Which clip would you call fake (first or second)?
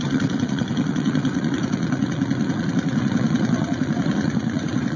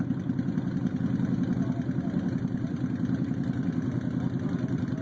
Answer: first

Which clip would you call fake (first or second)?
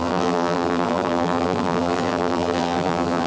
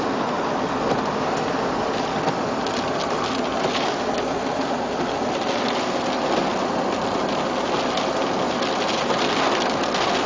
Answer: first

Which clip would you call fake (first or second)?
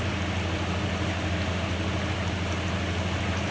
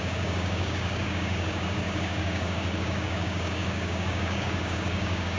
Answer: second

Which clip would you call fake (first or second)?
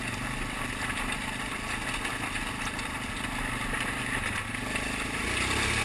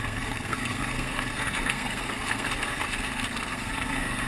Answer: second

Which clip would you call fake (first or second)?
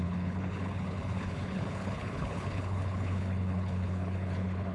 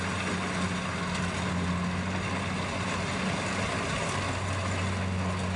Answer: first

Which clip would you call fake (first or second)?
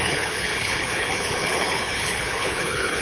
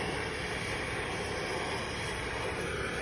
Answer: first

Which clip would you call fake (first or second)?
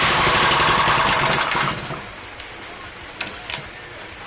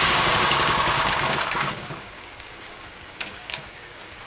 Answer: second